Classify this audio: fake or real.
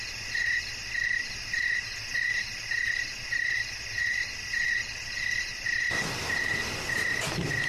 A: real